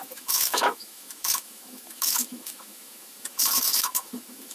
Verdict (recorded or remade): remade